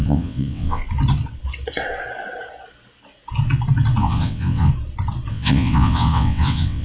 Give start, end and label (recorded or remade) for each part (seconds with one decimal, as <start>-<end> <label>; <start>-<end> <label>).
0.0-0.8 remade; 0.8-4.0 recorded; 4.0-4.7 remade; 4.7-5.3 recorded; 5.3-6.8 remade